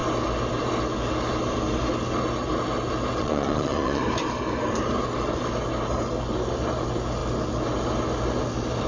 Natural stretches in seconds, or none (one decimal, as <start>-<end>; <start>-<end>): 0.0-3.2; 4.0-8.9